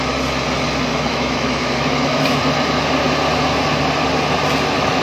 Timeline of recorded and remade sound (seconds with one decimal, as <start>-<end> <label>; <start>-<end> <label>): 0.0-0.9 recorded; 0.9-2.4 remade; 2.4-5.0 recorded